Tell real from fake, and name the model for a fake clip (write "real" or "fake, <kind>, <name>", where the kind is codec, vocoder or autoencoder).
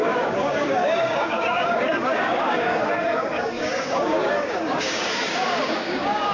fake, codec, DAC